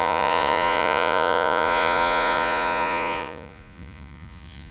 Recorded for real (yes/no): no